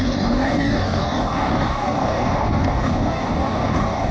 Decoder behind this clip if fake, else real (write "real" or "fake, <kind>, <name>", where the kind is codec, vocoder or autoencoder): fake, codec, DAC